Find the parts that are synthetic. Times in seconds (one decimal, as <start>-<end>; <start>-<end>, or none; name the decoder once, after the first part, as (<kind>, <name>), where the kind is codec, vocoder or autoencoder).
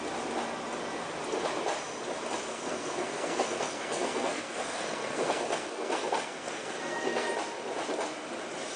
2.5-7.3 (codec, SNAC)